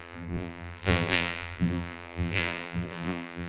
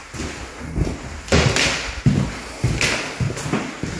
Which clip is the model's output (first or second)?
first